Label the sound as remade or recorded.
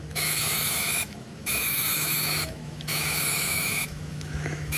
remade